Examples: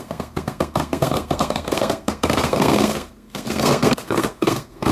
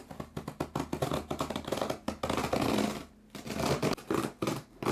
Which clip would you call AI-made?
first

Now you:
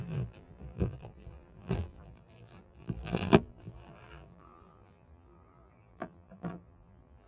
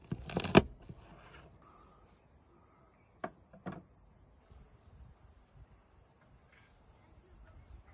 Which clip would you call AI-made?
first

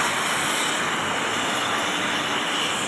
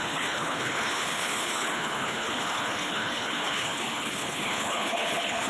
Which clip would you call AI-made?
second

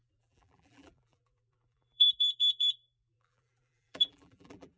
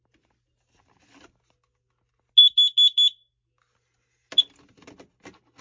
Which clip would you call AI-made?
first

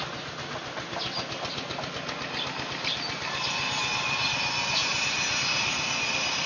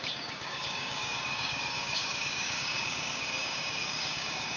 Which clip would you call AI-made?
second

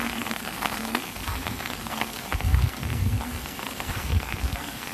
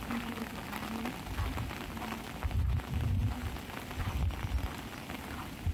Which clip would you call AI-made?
first